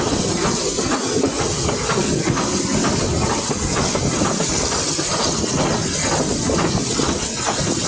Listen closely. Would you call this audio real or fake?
real